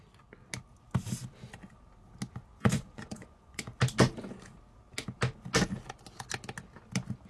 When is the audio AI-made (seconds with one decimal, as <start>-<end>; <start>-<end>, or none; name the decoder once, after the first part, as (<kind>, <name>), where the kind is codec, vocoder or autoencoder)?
2.5-3.8 (vocoder, Vocos)